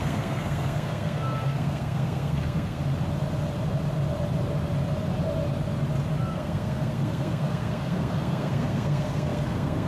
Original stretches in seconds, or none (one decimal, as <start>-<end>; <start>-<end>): 2.8-6.2